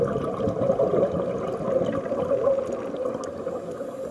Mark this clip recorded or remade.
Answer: recorded